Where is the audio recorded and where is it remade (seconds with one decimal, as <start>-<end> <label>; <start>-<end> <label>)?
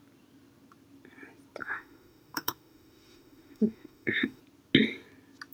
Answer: 0.0-1.6 recorded; 1.6-4.4 remade; 4.4-5.5 recorded